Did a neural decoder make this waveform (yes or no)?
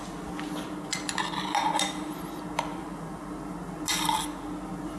no